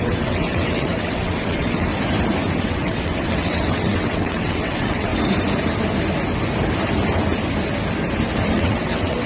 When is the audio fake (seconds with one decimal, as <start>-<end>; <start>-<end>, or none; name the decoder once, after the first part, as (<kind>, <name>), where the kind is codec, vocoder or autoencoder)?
0.0-1.9 (vocoder, WaveNeXt); 2.6-5.1; 8.5-9.3